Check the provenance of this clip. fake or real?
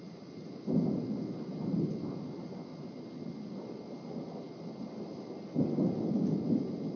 real